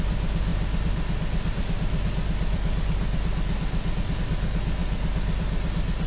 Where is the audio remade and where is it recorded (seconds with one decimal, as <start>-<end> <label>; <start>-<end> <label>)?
0.0-6.1 recorded